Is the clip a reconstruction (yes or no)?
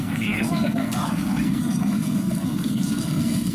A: yes